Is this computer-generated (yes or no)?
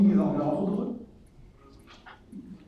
no